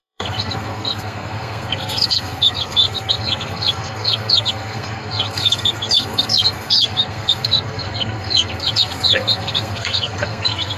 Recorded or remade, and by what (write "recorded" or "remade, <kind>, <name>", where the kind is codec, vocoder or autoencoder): remade, codec, SNAC